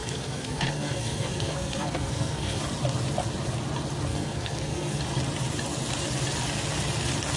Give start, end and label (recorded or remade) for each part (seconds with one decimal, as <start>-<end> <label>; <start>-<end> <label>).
0.0-2.6 remade; 2.6-4.1 recorded; 4.1-5.0 remade; 5.0-7.4 recorded